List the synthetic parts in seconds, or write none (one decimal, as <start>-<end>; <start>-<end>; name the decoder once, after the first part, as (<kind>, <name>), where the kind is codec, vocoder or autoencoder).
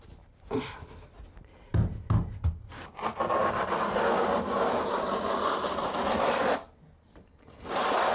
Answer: none